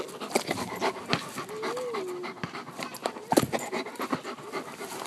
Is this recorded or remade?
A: recorded